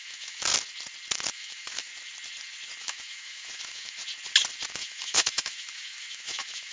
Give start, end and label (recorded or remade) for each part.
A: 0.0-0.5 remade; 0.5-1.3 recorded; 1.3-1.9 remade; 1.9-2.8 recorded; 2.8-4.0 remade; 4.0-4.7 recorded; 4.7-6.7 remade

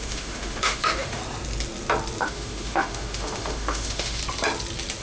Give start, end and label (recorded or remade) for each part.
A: 0.0-1.2 remade; 1.2-2.2 recorded; 2.2-4.2 remade; 4.2-5.0 recorded